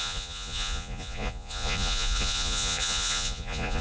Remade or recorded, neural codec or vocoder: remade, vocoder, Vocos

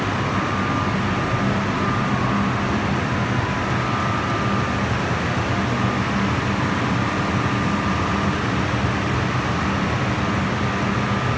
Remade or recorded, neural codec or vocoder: recorded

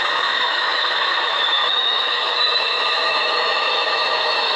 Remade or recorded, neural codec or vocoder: remade, autoencoder, DAC-VAE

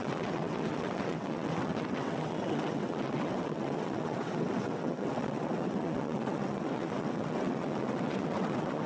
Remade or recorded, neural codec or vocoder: remade, vocoder, WaveNeXt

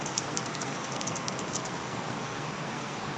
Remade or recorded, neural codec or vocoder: remade, codec, SNAC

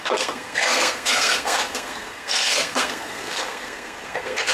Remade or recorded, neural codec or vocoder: remade, codec, SNAC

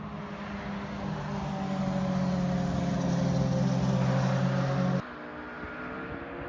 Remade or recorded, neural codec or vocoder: recorded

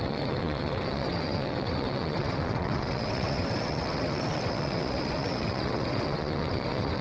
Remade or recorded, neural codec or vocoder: remade, vocoder, WaveNeXt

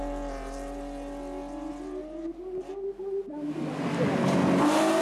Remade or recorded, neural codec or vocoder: recorded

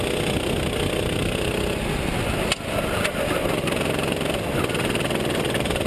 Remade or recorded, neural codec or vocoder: recorded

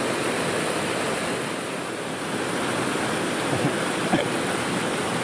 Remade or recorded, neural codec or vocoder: recorded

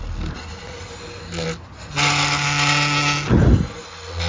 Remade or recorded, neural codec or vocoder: recorded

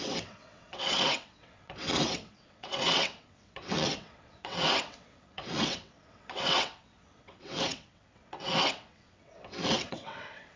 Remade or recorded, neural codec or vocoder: remade, vocoder, WaveNeXt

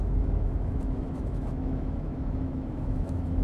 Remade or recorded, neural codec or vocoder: remade, autoencoder, DAC-VAE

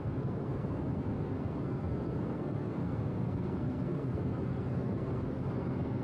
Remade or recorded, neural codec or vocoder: remade, codec, SNAC